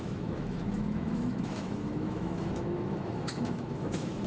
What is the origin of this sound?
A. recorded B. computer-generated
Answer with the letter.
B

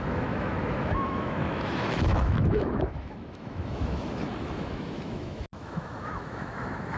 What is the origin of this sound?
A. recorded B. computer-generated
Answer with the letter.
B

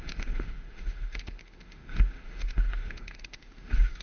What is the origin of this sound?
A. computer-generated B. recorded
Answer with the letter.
A